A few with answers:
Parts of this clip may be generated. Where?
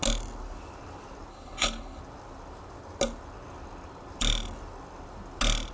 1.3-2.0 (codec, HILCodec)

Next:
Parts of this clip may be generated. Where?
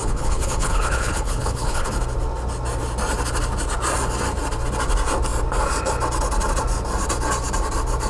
0.0-1.9 (codec, HILCodec)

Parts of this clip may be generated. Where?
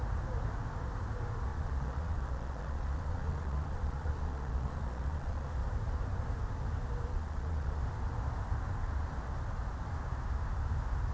1.5-5.5 (vocoder, Vocos); 7.1-7.8